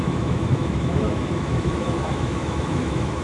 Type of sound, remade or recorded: remade